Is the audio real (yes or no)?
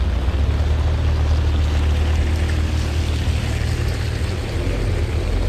yes